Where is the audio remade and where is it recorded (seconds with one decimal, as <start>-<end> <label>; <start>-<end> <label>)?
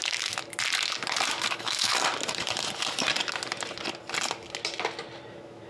0.0-0.4 remade; 0.4-1.5 recorded; 1.5-1.9 remade; 1.9-5.3 recorded; 5.3-5.7 remade